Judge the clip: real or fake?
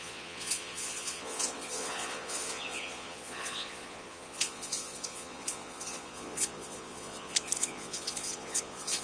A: fake